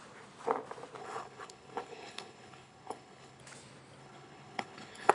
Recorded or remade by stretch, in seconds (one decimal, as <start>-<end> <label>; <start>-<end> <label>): 0.0-1.0 recorded; 1.0-3.4 remade; 3.4-4.0 recorded; 4.0-5.1 remade